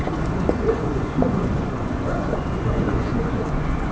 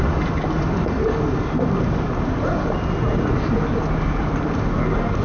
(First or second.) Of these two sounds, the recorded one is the second